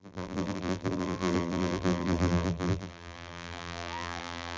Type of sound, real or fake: fake